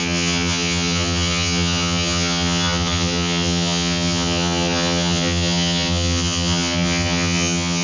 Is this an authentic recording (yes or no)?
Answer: no